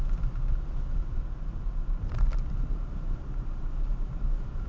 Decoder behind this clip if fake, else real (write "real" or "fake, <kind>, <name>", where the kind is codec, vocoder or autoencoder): real